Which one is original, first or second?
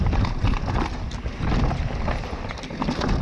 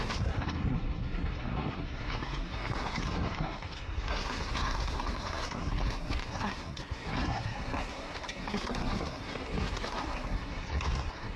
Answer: first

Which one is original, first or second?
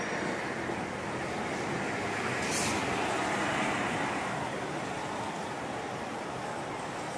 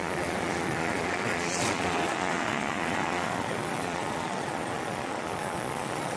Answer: first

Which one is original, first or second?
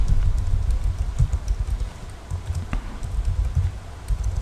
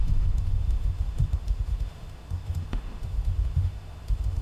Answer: first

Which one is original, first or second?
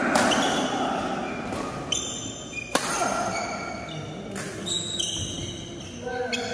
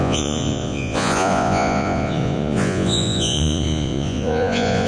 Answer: first